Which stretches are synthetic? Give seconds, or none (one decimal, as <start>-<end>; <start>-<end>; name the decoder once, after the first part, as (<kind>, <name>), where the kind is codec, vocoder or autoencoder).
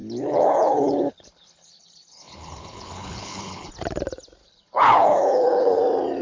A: 0.0-3.7 (codec, HILCodec); 4.4-5.8